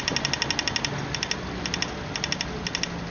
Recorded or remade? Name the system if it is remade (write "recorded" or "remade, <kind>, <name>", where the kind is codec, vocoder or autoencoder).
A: recorded